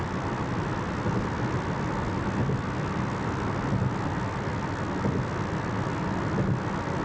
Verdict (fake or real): real